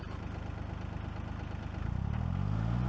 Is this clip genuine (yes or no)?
yes